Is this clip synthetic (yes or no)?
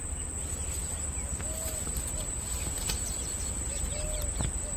no